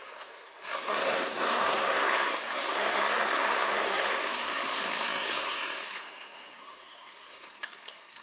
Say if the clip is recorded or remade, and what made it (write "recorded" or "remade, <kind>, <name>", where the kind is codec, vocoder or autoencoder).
remade, codec, SNAC